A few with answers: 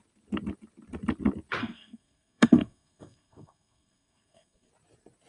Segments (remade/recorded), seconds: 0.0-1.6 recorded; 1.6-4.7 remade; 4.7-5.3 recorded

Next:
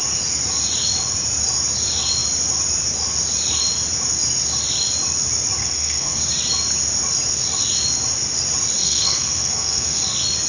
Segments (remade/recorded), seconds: 0.0-5.6 recorded; 5.6-6.2 remade; 6.2-8.8 recorded; 8.8-10.0 remade; 10.0-10.5 recorded

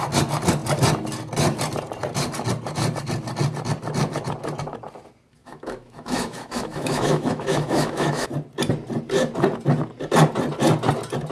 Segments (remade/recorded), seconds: 0.0-5.4 recorded; 5.4-8.3 remade; 8.3-11.3 recorded

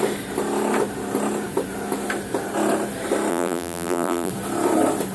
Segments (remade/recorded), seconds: 0.0-3.3 recorded; 3.3-4.3 remade; 4.3-5.1 recorded

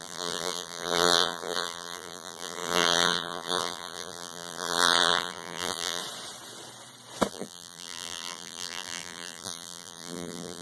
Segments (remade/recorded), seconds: 0.0-6.0 remade; 6.0-7.3 recorded; 7.3-10.6 remade

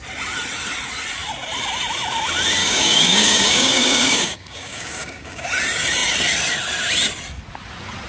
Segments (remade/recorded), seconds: 0.0-2.6 recorded; 2.6-5.5 remade; 5.5-8.1 recorded

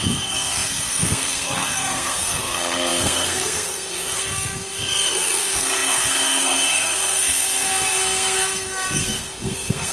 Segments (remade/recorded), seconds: 0.0-9.9 remade

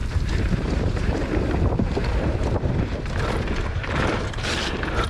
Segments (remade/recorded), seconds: 0.0-3.1 remade; 3.1-5.1 recorded